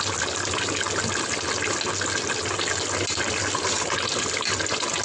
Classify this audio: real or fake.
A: real